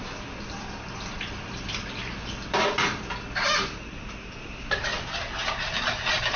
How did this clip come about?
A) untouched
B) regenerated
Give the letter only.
A